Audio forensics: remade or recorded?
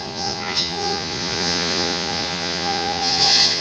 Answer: remade